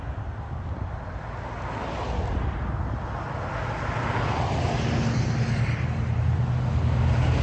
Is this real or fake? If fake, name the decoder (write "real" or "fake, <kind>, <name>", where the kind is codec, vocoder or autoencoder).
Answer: real